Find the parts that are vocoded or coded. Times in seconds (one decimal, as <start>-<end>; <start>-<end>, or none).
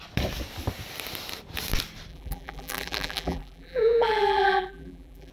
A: 2.1-5.3